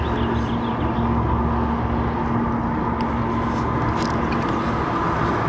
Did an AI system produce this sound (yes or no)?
no